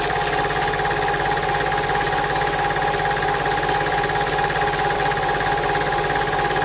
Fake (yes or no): no